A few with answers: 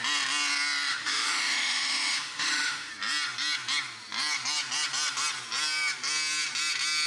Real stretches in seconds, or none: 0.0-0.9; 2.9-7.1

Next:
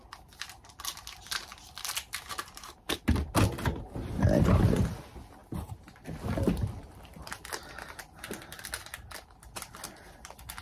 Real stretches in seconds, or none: 0.0-1.5; 3.0-5.4; 7.5-10.6

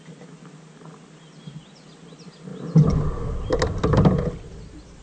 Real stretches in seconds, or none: 0.0-5.0